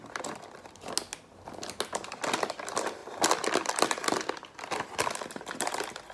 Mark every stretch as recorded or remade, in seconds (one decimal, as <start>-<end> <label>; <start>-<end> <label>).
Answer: 0.0-6.1 recorded